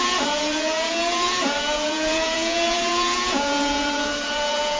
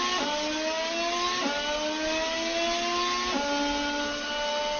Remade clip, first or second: first